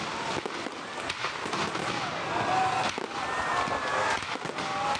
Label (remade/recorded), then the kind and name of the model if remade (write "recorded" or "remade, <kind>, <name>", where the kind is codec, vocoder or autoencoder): recorded